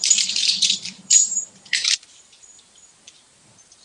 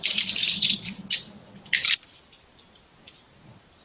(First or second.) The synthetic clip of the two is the first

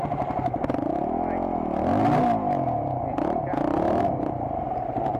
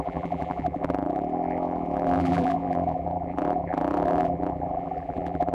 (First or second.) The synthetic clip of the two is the second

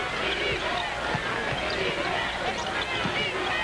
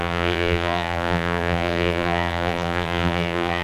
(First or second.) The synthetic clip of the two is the second